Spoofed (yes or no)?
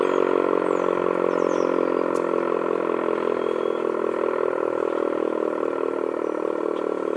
no